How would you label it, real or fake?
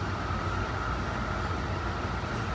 real